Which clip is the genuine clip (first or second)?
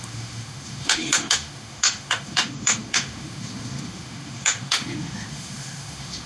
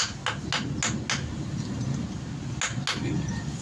second